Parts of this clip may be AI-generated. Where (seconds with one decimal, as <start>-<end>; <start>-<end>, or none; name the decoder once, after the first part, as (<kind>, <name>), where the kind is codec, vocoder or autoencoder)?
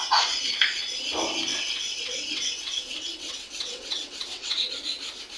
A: 1.5-4.7 (vocoder, WaveNeXt)